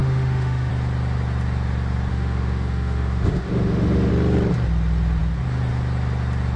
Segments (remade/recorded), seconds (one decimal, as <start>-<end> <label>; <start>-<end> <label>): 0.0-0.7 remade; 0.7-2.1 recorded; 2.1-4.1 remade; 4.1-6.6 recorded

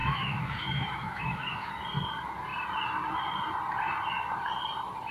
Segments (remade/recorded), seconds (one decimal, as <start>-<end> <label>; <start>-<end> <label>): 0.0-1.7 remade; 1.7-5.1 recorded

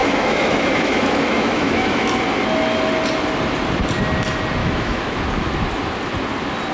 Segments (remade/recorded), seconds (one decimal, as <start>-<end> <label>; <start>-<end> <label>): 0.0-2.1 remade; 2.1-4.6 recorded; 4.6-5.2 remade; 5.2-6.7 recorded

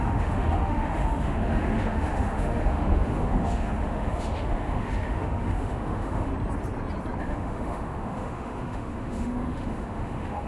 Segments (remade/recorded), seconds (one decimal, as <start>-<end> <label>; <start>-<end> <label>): 0.0-6.3 remade; 6.3-7.2 recorded; 7.2-10.5 remade